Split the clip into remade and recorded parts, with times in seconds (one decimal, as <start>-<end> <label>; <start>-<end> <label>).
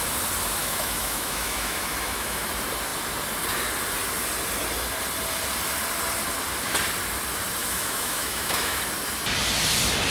0.0-0.6 recorded; 0.6-2.5 remade; 2.5-7.6 recorded; 7.6-8.8 remade; 8.8-10.1 recorded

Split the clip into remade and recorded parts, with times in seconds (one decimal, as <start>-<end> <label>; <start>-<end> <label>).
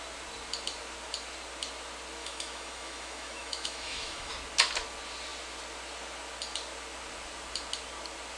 0.0-2.2 recorded; 2.2-4.3 remade; 4.3-8.4 recorded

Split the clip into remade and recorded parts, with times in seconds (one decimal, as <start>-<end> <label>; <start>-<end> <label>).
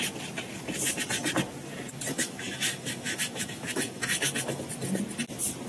0.0-2.1 recorded; 2.1-4.7 remade; 4.7-5.7 recorded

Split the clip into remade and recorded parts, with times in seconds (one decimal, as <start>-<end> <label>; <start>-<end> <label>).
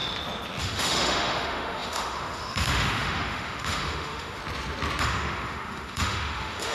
0.0-0.6 recorded; 0.6-4.4 remade; 4.4-5.0 recorded; 5.0-6.7 remade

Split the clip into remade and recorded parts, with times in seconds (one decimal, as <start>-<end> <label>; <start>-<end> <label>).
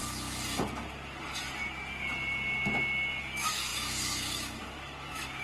0.0-3.2 recorded; 3.2-5.4 remade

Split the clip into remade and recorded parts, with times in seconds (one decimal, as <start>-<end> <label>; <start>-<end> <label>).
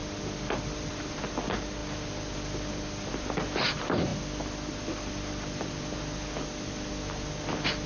0.0-7.9 recorded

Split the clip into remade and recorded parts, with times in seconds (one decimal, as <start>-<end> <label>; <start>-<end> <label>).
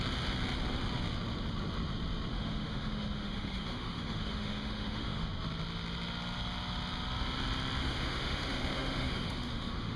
0.0-2.3 recorded; 2.3-5.3 remade; 5.3-7.8 recorded; 7.8-10.0 remade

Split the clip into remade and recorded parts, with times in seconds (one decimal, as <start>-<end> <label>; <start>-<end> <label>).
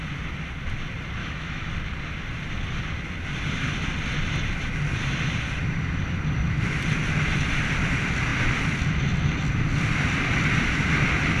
0.0-1.2 recorded; 1.2-1.7 remade; 1.7-11.4 recorded